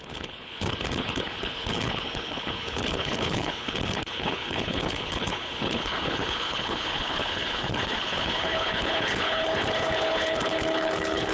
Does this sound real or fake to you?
fake